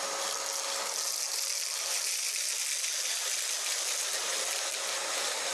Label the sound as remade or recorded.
recorded